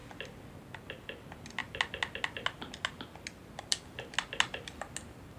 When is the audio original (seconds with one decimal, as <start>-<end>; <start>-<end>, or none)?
0.0-5.4